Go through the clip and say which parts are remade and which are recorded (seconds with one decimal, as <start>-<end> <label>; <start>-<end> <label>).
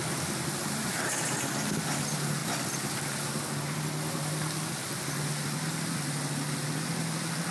0.0-0.6 recorded; 0.6-1.2 remade; 1.2-7.5 recorded